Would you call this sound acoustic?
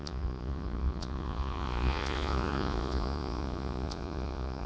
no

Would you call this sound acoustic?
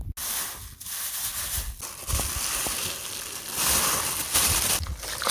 yes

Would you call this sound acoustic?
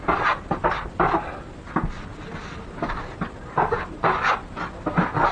yes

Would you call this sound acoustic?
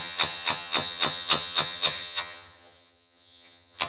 no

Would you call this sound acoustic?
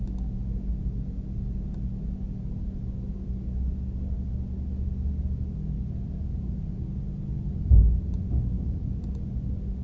yes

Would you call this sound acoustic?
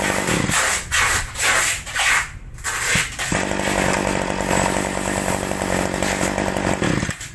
yes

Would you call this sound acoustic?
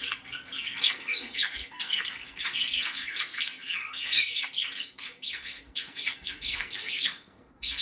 no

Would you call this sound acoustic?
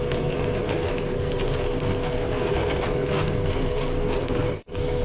no